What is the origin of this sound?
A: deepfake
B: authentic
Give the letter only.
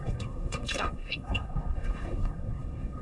A